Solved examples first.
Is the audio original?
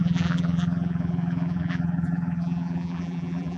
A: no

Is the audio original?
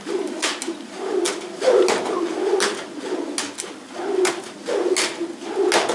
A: yes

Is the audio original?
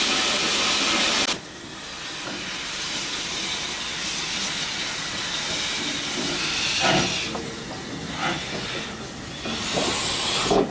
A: yes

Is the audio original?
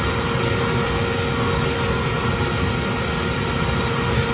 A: yes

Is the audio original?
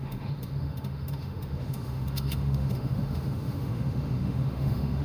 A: no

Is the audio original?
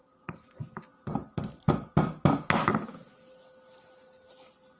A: yes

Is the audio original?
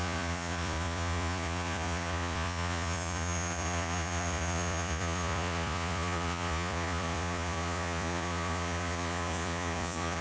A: no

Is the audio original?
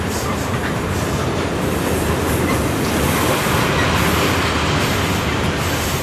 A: yes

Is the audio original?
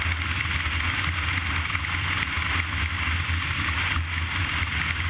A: yes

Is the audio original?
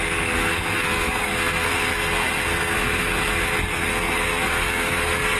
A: no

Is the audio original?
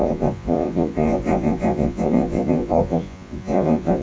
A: no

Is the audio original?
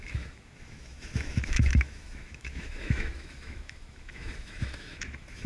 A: no